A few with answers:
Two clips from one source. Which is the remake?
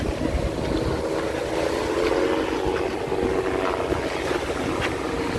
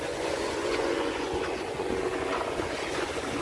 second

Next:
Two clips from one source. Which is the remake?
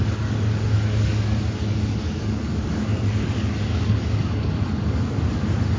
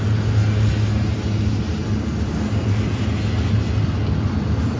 first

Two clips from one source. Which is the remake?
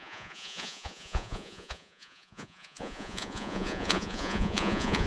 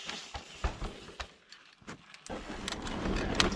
first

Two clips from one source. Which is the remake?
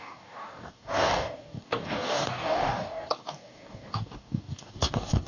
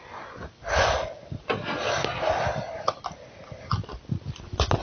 first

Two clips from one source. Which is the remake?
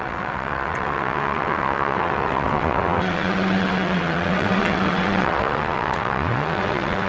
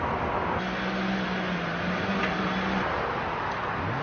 first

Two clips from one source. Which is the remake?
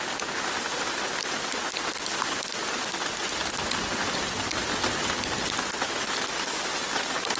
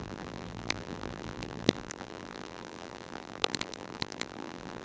second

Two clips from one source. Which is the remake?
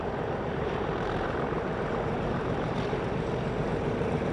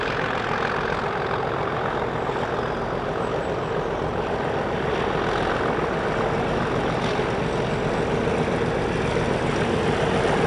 first